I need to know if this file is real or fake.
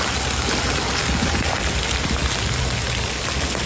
real